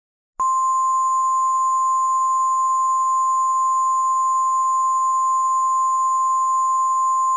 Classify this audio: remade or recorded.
recorded